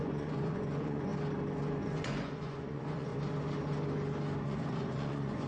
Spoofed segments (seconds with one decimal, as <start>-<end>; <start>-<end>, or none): 0.0-1.1; 1.8-3.1; 4.4-5.5